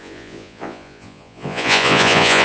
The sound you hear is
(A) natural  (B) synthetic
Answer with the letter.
B